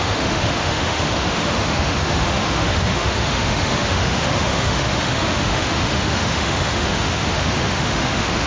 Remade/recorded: remade